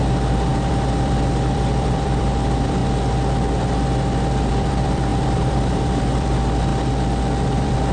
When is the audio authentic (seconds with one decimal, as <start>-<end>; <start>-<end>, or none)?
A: 2.8-4.5; 6.7-7.4